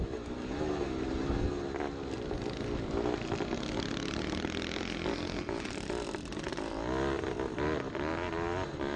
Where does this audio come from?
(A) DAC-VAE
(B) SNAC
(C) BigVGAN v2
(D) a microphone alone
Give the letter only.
D